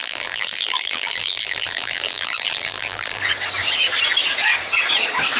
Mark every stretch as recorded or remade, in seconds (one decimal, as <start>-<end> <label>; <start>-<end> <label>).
0.0-3.2 remade; 3.2-5.4 recorded